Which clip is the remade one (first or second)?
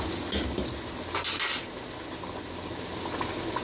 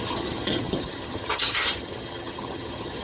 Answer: second